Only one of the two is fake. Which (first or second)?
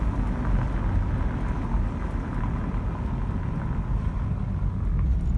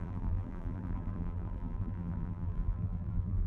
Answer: second